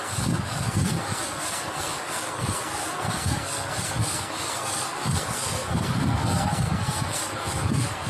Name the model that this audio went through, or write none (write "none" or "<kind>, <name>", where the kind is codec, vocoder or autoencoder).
codec, SNAC